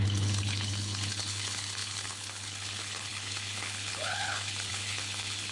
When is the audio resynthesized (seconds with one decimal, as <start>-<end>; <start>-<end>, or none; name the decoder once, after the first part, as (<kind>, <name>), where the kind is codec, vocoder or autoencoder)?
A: 0.0-5.5 (codec, HILCodec)